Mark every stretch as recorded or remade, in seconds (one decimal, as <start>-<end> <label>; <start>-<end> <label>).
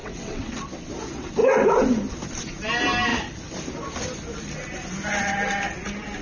0.0-0.7 remade; 0.7-6.2 recorded